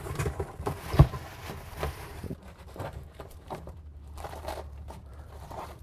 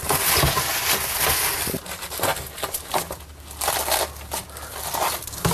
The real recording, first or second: second